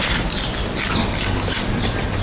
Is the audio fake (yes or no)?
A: no